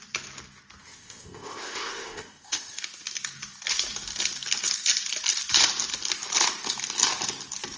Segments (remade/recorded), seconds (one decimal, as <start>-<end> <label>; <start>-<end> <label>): 0.0-0.8 recorded; 0.8-2.8 remade; 2.8-7.8 recorded